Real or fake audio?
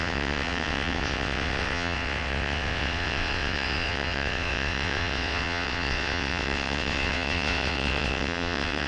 fake